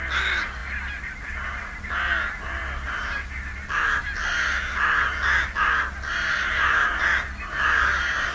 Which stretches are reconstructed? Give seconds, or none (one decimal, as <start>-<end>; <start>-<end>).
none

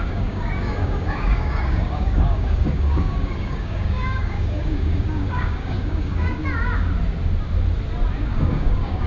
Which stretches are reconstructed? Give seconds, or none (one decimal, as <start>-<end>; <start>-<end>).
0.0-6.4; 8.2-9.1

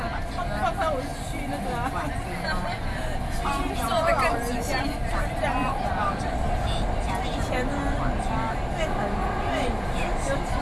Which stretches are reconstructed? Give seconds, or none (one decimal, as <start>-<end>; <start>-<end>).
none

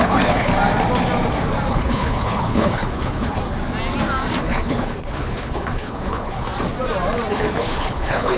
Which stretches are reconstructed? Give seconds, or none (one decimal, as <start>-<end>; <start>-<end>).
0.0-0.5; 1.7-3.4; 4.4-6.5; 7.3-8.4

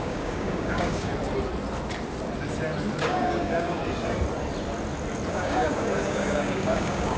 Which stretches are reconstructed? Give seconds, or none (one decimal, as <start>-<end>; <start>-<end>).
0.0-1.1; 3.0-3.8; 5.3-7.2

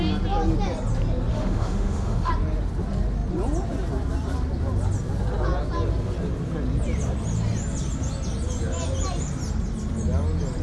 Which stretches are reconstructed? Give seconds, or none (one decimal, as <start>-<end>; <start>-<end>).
1.3-2.3